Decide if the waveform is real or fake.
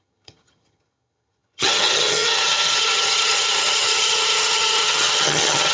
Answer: fake